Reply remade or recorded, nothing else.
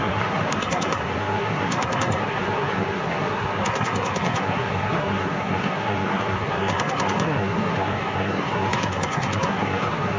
remade